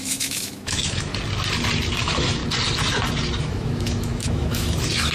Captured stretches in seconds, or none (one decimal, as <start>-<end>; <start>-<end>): 1.1-2.0; 2.4-3.4